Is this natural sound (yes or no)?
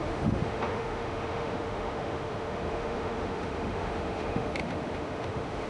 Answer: no